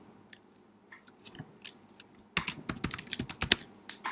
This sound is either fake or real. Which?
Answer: real